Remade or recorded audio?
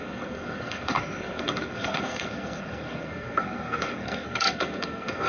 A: remade